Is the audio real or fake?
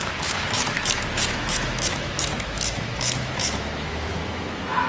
fake